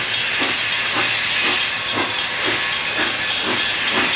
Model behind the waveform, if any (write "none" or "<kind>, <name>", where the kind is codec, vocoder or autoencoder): none